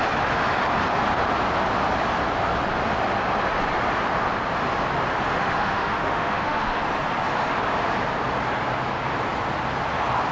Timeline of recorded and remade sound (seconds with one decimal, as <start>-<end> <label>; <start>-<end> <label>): 0.0-5.3 recorded; 5.3-6.8 remade; 6.8-10.3 recorded